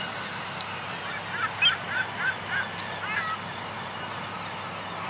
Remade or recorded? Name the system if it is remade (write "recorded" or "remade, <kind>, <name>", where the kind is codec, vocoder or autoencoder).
recorded